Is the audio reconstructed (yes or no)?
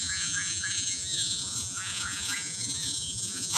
yes